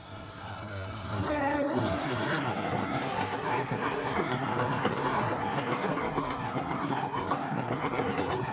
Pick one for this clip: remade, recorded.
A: remade